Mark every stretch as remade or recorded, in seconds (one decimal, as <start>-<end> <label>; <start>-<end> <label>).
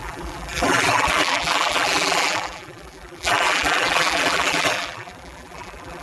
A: 0.0-6.0 remade